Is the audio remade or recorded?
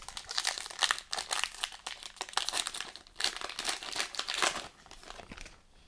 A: recorded